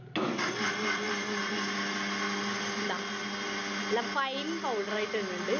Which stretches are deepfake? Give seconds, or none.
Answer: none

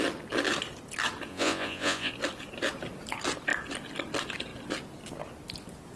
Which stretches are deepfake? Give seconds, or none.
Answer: 1.3-2.1 (vocoder, Vocos)

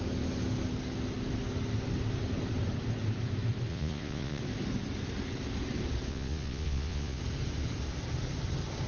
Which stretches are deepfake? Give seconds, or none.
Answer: 3.7-4.4 (vocoder, Vocos); 6.1-7.2

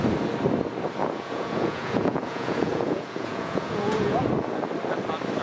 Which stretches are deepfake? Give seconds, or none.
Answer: 1.0-4.2 (vocoder, Vocos)

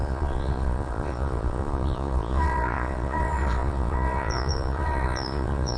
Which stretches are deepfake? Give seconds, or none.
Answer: 0.0-5.8 (vocoder, Vocos)

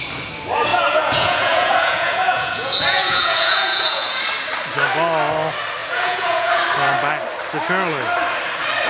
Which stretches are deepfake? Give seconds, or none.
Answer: 0.7-4.2 (vocoder, Vocos); 5.8-6.6

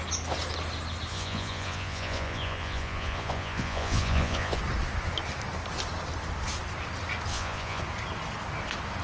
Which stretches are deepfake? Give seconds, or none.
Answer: 1.1-4.6 (vocoder, Vocos); 7.3-7.8